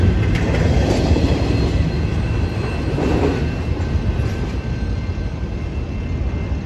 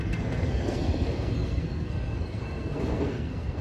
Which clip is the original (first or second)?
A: first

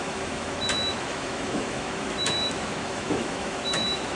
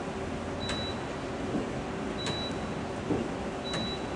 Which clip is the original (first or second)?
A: second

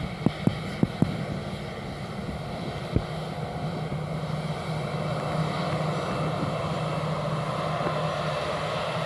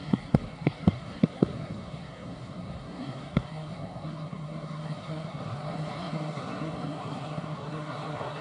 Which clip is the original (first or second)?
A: first